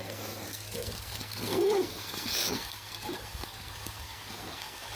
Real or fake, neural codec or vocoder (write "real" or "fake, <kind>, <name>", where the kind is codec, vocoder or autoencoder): fake, codec, SNAC